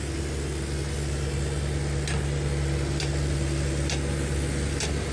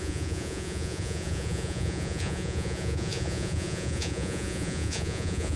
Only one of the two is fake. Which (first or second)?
second